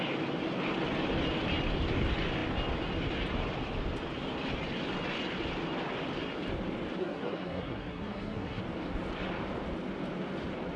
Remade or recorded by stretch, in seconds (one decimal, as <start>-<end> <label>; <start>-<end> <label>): 0.0-7.0 recorded; 7.0-8.6 remade; 8.6-10.8 recorded